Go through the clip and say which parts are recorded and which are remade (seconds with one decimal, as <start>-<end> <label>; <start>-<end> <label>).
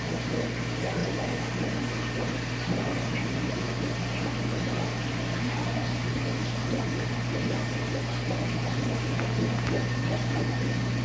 0.0-11.0 recorded